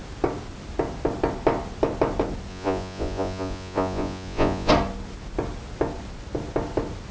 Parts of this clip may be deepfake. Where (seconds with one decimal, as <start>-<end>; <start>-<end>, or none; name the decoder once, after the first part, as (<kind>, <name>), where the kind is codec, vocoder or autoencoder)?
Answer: 2.5-4.7 (vocoder, Vocos)